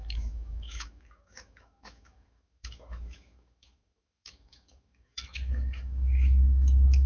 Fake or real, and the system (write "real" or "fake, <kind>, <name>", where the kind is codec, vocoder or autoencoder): fake, autoencoder, DAC-VAE